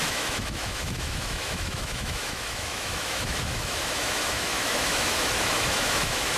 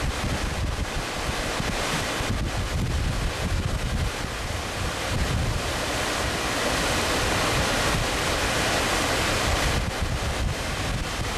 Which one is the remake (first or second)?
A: first